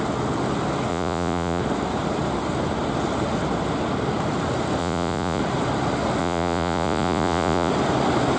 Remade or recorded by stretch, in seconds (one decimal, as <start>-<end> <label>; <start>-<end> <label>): 0.0-0.9 recorded; 0.9-1.6 remade; 1.6-4.8 recorded; 4.8-5.4 remade; 5.4-6.2 recorded; 6.2-7.7 remade; 7.7-8.4 recorded